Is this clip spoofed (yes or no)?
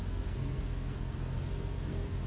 yes